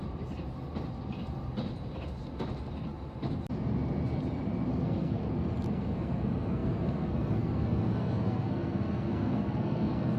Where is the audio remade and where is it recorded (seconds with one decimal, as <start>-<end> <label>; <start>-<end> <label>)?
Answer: 0.0-4.7 recorded; 4.7-5.2 remade; 5.2-5.7 recorded; 5.7-10.2 remade